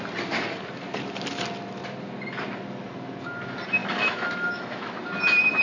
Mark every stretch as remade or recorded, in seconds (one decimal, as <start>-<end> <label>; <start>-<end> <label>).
0.0-3.8 recorded; 3.8-4.9 remade; 4.9-5.6 recorded